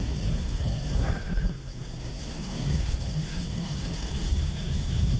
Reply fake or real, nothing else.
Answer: fake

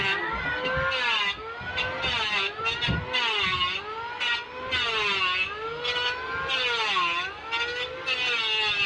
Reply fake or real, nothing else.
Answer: real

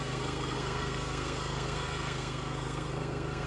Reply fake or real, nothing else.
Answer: fake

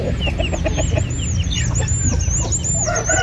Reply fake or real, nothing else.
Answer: real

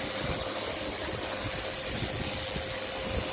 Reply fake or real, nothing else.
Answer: real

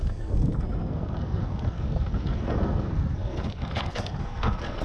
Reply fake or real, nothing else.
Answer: fake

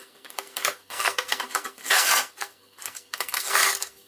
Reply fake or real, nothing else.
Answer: fake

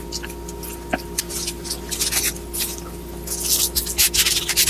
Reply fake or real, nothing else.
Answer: real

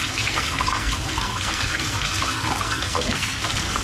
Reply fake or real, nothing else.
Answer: fake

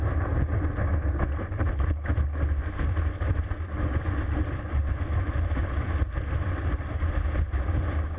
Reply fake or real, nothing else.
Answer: real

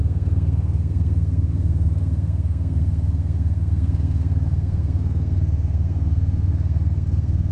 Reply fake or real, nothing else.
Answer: fake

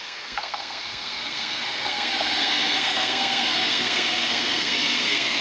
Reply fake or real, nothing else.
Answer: fake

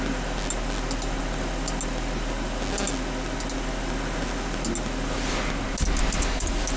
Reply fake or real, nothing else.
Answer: real